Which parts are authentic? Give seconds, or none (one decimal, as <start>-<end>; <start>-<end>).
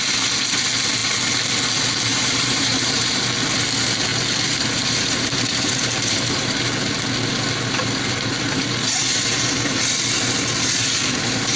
0.0-2.1; 3.3-4.1; 6.7-11.6